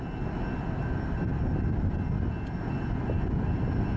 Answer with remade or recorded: recorded